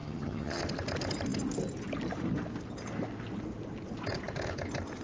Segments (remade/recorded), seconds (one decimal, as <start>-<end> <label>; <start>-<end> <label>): 0.0-0.6 remade; 0.6-5.0 recorded